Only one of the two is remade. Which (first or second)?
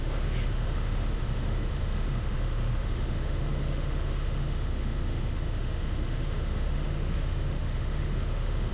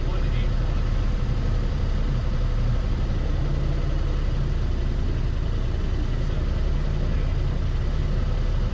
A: first